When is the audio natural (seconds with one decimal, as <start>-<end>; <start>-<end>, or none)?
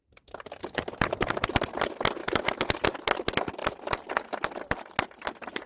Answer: 0.0-2.2; 2.8-5.7